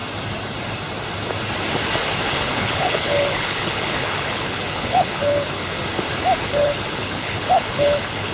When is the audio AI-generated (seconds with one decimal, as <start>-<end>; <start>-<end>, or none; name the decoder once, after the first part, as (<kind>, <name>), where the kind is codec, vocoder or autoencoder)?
2.2-5.8 (codec, HILCodec); 6.4-8.3